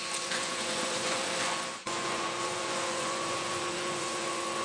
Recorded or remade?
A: remade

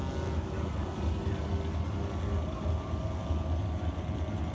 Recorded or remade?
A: recorded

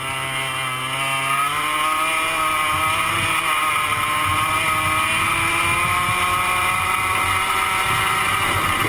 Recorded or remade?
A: recorded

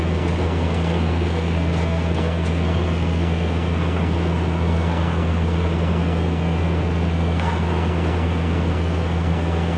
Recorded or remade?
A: remade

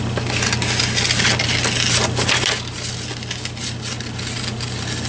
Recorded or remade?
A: recorded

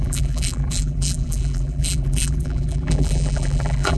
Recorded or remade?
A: remade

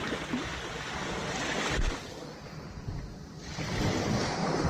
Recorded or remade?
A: recorded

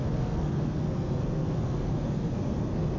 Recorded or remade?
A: remade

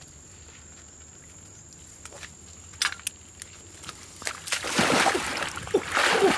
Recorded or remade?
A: recorded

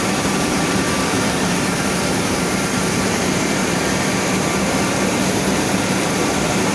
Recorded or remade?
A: remade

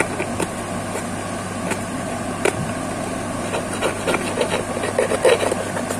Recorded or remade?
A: recorded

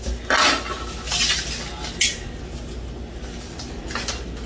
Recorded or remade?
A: recorded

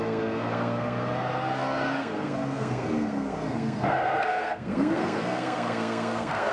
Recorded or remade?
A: remade